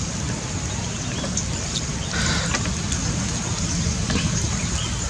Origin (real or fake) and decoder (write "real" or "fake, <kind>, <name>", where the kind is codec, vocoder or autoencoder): real